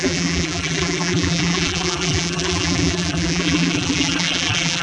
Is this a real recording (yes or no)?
no